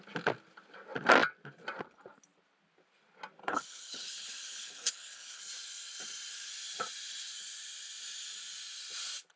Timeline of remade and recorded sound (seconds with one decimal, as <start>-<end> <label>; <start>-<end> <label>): 0.0-3.4 recorded; 3.4-5.4 remade; 5.4-9.4 recorded

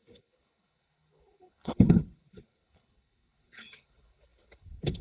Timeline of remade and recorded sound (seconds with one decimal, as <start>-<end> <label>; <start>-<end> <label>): 0.0-5.0 remade

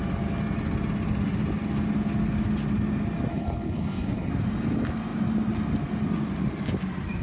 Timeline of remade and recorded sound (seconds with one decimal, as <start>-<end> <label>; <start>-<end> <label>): 0.0-3.3 recorded; 3.3-4.3 remade; 4.3-7.2 recorded

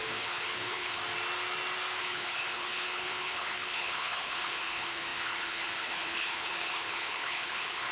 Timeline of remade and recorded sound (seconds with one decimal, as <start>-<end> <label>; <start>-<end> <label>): 0.0-1.0 remade; 1.0-2.0 recorded; 2.0-7.9 remade

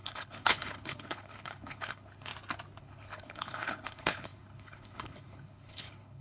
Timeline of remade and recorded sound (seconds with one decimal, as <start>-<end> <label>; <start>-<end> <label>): 0.0-2.3 remade; 2.3-2.8 recorded; 2.8-6.2 remade